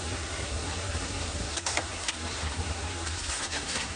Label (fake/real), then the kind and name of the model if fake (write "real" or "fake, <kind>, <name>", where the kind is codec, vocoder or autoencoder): fake, codec, SNAC